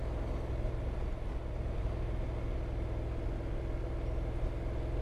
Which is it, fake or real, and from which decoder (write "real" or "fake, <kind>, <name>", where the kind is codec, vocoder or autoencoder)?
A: real